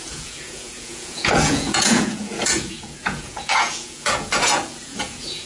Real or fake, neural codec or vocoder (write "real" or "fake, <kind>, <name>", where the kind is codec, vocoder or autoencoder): fake, vocoder, Vocos